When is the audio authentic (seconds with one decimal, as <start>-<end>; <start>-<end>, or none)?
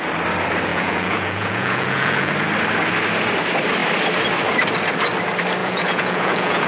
0.0-0.7; 2.3-5.6